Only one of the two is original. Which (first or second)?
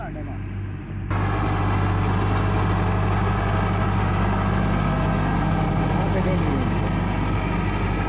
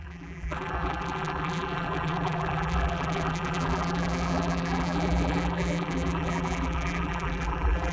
first